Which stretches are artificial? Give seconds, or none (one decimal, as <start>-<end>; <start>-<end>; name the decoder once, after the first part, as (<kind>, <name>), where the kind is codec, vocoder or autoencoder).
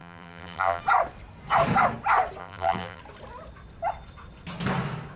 0.0-0.8 (vocoder, BigVGAN v2); 2.4-3.0